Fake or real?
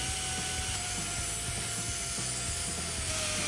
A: real